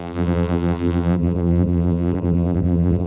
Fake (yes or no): yes